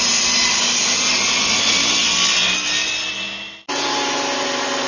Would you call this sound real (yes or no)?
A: yes